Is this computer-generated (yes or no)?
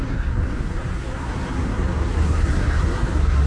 yes